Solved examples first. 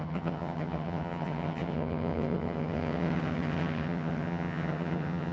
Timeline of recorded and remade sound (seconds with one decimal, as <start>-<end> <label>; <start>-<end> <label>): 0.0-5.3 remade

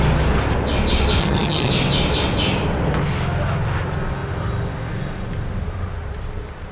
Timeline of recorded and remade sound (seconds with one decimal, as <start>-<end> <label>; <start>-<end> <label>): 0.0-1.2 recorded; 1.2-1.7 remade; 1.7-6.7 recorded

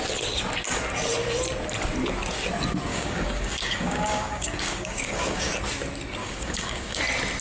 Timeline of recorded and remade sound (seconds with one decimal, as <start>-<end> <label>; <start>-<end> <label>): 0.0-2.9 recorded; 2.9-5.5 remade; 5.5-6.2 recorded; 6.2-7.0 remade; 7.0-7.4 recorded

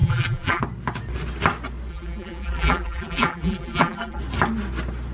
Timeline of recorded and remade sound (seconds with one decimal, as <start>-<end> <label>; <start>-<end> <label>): 0.0-0.6 remade; 0.6-1.9 recorded; 1.9-4.2 remade; 4.2-5.1 recorded

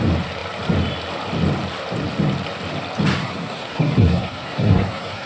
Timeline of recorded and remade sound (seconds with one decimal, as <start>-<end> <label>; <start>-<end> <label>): 0.0-3.2 recorded; 3.2-5.3 remade